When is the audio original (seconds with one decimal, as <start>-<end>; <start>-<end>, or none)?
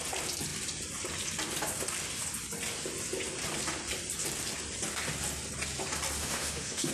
0.0-6.2